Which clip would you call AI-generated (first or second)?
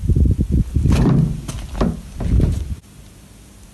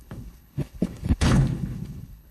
second